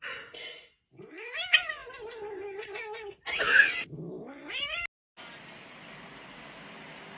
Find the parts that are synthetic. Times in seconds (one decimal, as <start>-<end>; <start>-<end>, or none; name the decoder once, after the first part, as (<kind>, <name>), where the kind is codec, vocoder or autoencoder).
none